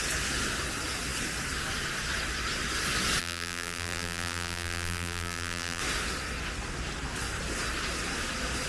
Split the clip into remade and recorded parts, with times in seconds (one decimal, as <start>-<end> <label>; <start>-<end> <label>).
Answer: 0.0-3.2 recorded; 3.2-5.8 remade; 5.8-8.7 recorded

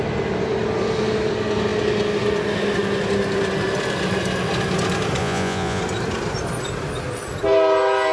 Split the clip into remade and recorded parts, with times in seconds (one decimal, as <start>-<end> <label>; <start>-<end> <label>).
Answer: 0.0-5.2 recorded; 5.2-5.8 remade; 5.8-8.1 recorded

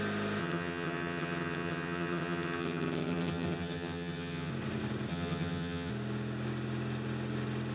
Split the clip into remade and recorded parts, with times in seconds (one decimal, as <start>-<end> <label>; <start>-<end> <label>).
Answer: 0.0-0.4 recorded; 0.4-4.5 remade; 4.5-5.1 recorded; 5.1-5.9 remade; 5.9-7.7 recorded

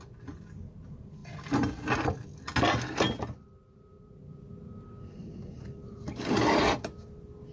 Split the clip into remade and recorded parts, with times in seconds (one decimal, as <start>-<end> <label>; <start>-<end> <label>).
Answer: 0.0-7.5 recorded